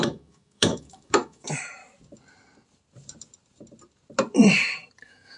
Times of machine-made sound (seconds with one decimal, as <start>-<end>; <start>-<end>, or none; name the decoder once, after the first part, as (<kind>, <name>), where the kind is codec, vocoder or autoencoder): 0.0-1.8 (autoencoder, DAC-VAE); 5.0-5.4

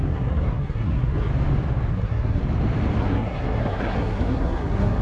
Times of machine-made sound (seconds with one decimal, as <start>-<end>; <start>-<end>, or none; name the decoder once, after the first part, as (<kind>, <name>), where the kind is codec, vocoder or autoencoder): 0.0-1.3 (codec, SNAC); 1.9-2.4; 3.0-5.0

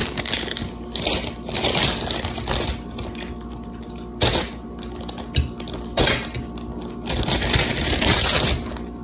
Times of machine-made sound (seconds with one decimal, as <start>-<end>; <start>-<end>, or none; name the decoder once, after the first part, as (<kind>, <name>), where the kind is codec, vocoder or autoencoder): none

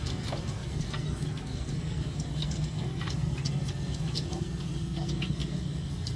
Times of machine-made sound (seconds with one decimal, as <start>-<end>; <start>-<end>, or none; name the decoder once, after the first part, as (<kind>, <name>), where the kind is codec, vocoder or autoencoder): 0.0-6.2 (codec, SNAC)

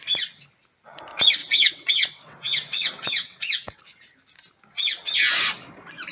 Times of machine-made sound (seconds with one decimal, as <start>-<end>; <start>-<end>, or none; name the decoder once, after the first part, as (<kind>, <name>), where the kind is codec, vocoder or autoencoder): 1.4-3.8 (vocoder, WaveNeXt)

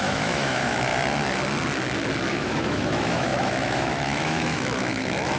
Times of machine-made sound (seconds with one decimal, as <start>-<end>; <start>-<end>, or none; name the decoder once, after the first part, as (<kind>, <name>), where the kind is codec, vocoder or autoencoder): 0.0-0.9 (autoencoder, DAC-VAE); 2.3-5.4